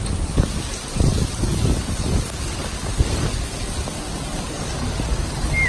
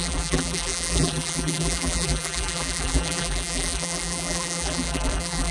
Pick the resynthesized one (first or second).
second